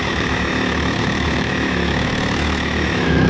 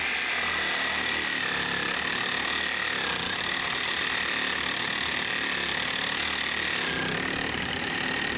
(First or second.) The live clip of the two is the second